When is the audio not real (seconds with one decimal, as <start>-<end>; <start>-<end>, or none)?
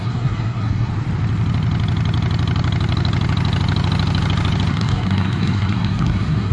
0.0-0.9; 4.7-6.5